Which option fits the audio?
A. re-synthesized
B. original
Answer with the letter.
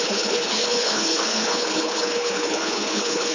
A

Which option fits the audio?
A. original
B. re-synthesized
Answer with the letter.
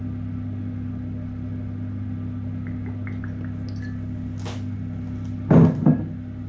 A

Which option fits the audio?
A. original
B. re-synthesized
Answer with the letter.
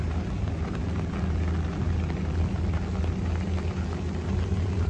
A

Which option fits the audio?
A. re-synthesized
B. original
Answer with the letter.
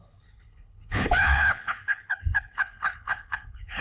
A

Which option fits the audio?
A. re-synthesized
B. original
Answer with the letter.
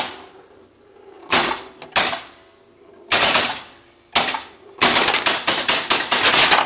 B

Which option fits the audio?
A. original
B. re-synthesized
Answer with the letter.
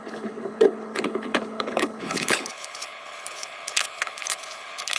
B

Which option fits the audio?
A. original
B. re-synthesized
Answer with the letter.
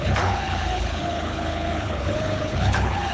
B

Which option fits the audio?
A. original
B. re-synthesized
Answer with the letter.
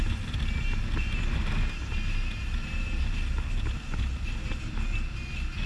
A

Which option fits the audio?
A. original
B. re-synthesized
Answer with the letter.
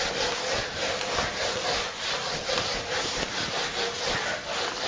A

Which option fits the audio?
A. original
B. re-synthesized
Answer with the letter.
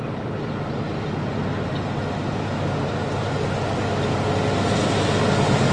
A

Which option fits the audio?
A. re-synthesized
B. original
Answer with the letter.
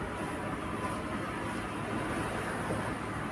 B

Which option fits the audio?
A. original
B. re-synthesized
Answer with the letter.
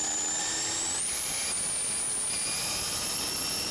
A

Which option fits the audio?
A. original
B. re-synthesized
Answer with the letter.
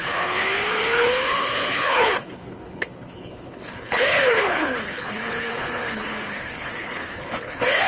B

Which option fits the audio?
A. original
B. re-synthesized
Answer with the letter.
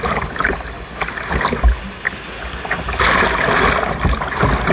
A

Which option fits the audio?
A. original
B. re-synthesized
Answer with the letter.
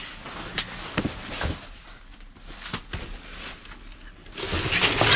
A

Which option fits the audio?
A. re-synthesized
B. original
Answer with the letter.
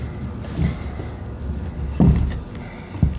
B